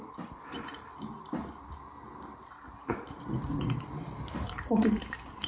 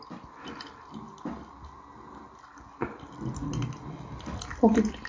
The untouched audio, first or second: second